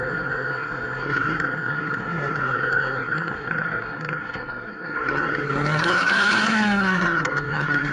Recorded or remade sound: remade